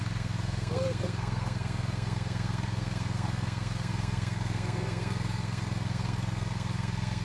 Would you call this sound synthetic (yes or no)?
yes